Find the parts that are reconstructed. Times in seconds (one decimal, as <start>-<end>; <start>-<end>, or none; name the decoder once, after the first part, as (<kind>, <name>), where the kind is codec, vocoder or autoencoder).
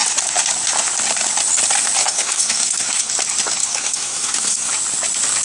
2.0-3.1 (codec, SNAC); 3.6-4.7